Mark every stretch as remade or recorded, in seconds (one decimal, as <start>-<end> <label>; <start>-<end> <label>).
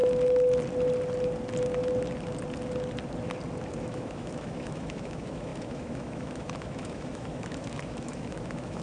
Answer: 0.0-3.8 recorded; 3.8-8.8 remade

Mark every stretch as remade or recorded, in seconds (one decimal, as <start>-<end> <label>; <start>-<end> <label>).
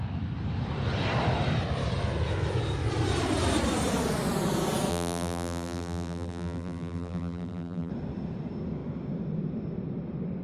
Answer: 0.0-4.9 recorded; 4.9-7.9 remade; 7.9-10.4 recorded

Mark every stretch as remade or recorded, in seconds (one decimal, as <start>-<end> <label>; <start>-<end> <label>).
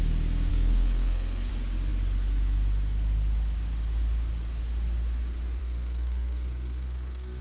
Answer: 0.0-0.5 recorded; 0.5-1.5 remade; 1.5-5.6 recorded; 5.6-7.4 remade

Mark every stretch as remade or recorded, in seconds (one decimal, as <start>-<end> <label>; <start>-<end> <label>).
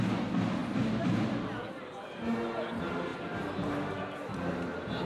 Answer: 0.0-5.0 recorded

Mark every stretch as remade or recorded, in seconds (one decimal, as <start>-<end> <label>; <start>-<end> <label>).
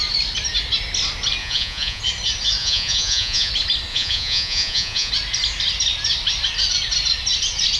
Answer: 0.0-1.4 recorded; 1.4-2.0 remade; 2.0-2.6 recorded; 2.6-3.5 remade; 3.5-3.9 recorded; 3.9-5.1 remade; 5.1-7.8 recorded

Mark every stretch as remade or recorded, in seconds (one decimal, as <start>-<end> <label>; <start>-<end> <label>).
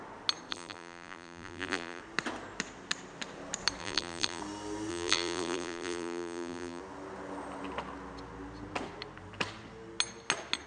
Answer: 0.0-0.5 recorded; 0.5-2.0 remade; 2.0-3.8 recorded; 3.8-4.4 remade; 4.4-4.9 recorded; 4.9-6.8 remade; 6.8-10.7 recorded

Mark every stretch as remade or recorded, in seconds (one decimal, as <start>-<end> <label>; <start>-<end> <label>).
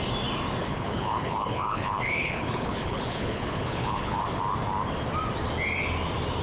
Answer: 0.0-0.6 recorded; 0.6-4.2 remade; 4.2-6.4 recorded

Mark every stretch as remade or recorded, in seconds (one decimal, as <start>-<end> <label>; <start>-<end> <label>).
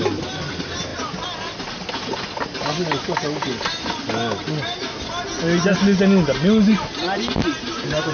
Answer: 0.0-8.1 recorded